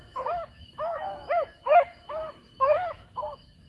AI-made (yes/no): yes